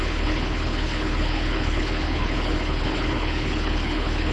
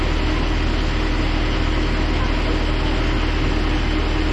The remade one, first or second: first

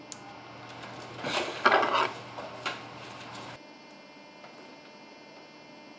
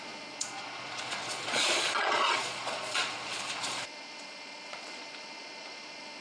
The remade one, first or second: second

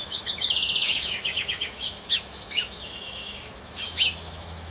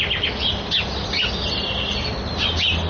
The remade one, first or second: first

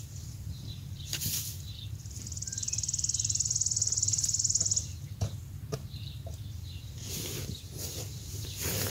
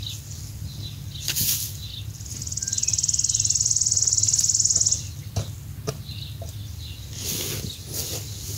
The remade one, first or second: first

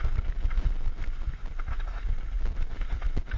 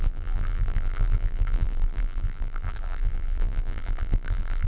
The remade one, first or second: second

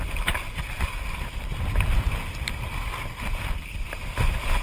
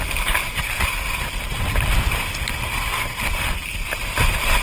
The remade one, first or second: first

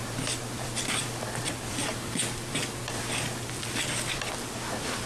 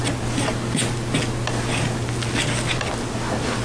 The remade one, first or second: first